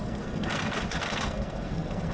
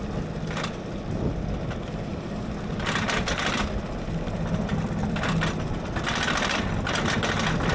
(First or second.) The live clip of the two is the second